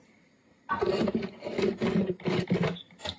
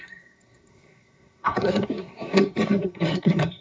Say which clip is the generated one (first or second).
second